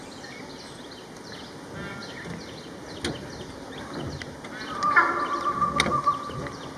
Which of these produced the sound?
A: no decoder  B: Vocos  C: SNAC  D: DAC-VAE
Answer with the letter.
A